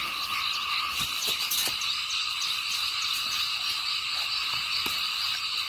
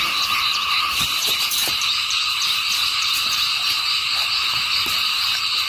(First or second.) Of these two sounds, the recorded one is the first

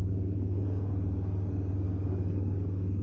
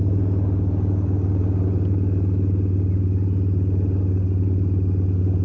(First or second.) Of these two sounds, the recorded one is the second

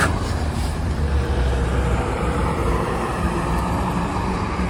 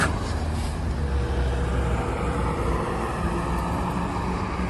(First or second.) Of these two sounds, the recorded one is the second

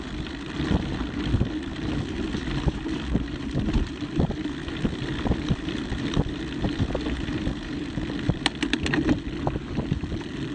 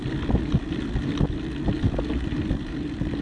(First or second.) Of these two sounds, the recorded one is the second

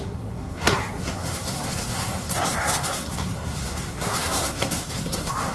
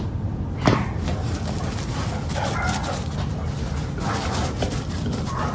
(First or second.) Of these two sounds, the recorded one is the second